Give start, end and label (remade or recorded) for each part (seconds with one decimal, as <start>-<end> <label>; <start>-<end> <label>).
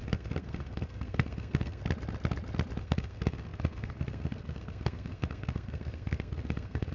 0.0-1.8 remade; 1.8-2.8 recorded; 2.8-6.9 remade